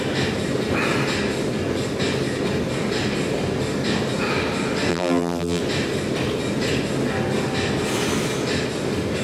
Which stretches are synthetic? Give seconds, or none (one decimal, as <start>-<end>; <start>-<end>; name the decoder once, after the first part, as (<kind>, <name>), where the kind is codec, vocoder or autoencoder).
4.9-5.6 (vocoder, BigVGAN v2)